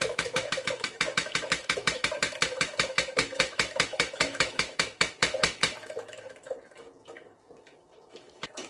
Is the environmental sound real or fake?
fake